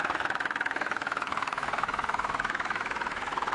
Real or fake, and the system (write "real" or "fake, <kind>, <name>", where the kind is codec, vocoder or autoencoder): fake, autoencoder, DAC-VAE